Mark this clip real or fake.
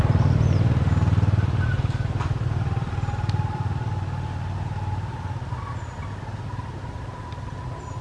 real